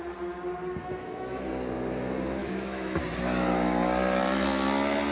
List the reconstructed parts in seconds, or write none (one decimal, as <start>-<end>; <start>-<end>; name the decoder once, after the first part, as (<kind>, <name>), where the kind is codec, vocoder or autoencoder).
0.8-1.5 (autoencoder, DAC-VAE); 2.4-3.0